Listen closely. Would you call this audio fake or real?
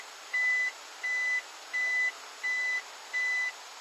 real